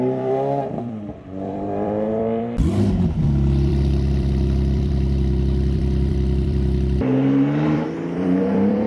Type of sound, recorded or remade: remade